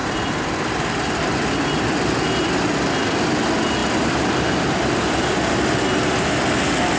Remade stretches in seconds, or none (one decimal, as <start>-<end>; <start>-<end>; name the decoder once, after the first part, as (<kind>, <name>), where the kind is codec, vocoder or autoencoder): 0.0-1.2 (vocoder, BigVGAN v2); 3.8-5.8

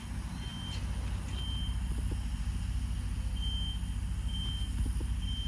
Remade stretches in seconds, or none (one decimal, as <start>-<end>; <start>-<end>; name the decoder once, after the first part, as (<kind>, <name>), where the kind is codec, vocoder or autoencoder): none

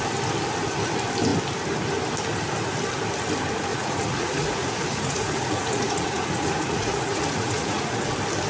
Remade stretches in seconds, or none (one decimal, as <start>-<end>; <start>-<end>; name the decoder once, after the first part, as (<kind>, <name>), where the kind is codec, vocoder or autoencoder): 3.7-8.1 (vocoder, Vocos)

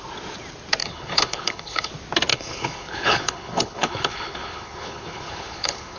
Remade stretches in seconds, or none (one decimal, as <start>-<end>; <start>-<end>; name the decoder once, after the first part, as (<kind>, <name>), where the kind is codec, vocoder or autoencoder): 0.8-1.9 (codec, HILCodec); 2.3-6.0